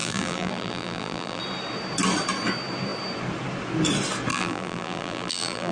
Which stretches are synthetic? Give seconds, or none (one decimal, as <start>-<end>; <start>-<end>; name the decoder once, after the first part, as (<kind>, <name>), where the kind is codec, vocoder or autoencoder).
0.0-1.4 (vocoder, BigVGAN v2); 4.3-5.7